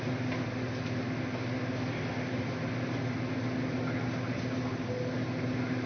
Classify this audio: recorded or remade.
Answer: recorded